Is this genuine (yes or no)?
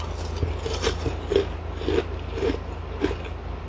yes